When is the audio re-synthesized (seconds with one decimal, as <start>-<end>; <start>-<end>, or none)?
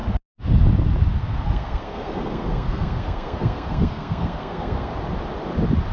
1.2-4.9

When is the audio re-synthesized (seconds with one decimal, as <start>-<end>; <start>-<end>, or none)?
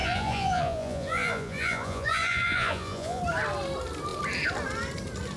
0.0-3.2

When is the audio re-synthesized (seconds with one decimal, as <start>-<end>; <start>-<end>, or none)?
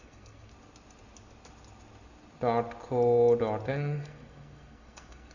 0.0-0.5; 3.7-5.3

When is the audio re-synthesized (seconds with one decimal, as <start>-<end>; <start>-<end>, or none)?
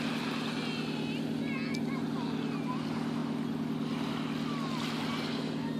none